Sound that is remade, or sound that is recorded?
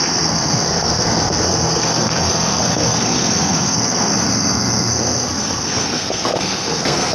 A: remade